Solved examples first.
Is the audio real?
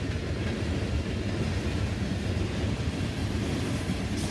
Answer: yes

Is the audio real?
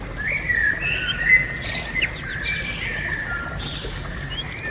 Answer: yes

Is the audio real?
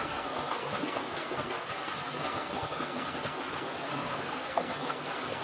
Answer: no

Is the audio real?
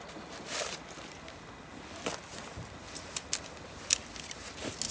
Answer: yes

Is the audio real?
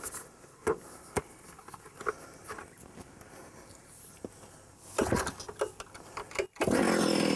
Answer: yes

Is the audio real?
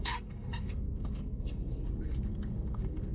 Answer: no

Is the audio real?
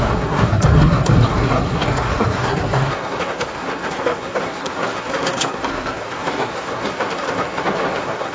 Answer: no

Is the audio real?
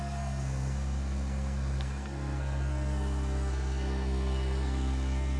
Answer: no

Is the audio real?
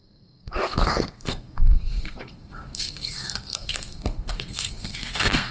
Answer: no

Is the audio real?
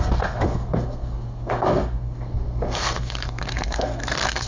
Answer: no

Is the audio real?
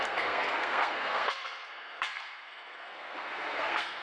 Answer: no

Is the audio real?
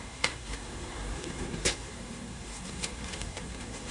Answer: no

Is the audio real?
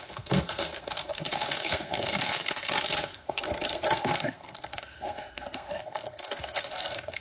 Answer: no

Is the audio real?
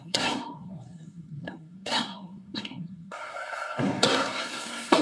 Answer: no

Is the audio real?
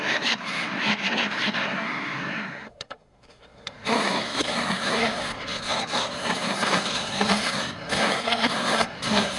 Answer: no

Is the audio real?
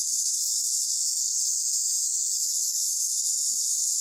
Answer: no